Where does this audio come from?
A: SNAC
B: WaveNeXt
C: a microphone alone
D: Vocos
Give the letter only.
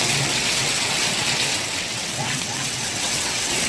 B